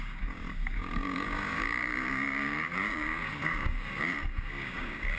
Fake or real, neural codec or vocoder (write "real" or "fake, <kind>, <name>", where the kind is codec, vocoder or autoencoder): fake, codec, DAC